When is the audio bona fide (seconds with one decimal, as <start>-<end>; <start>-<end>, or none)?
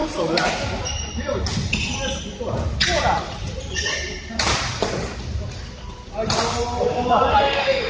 0.0-7.3